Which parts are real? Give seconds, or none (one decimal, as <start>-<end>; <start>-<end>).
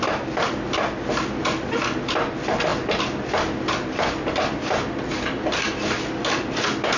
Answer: 0.0-7.0